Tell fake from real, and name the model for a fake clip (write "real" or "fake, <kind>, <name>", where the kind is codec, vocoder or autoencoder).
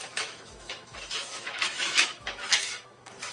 fake, autoencoder, DAC-VAE